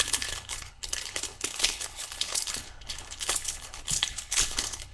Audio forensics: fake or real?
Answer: fake